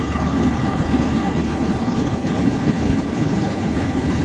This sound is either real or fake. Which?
fake